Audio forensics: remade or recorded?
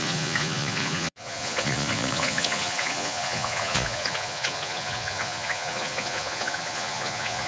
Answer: remade